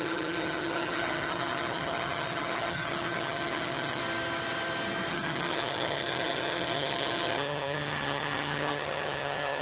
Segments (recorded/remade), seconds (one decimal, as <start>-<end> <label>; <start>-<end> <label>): 0.0-4.0 remade; 4.0-5.1 recorded; 5.1-9.6 remade